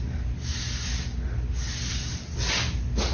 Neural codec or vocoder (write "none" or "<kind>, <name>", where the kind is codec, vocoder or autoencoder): none